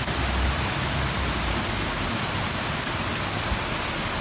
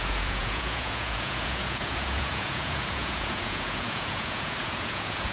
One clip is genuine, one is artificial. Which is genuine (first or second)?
first